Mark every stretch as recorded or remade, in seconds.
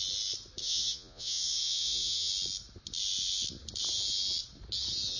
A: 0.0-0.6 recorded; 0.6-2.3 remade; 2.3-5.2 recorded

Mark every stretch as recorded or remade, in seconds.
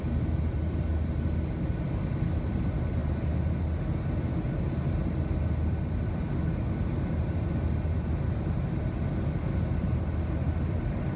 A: 0.0-11.2 recorded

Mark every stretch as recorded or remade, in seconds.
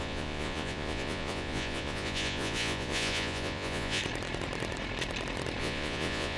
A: 0.0-4.0 remade; 4.0-5.6 recorded; 5.6-6.4 remade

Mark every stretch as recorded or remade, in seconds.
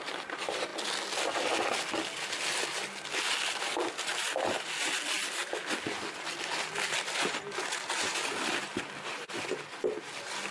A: 0.0-10.5 recorded